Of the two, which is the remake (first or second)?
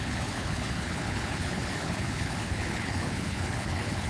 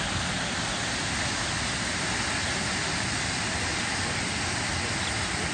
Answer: first